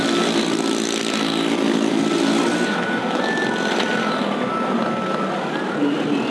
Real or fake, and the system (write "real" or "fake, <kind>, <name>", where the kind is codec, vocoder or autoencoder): real